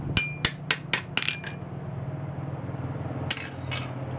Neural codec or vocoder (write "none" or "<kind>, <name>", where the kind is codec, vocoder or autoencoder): none